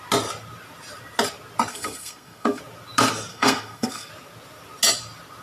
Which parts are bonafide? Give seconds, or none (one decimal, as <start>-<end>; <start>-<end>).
0.0-1.7; 2.6-3.3; 4.1-5.4